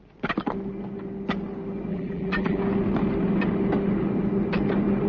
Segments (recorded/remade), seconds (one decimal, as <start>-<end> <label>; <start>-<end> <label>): 0.0-1.9 recorded; 1.9-2.6 remade; 2.6-5.1 recorded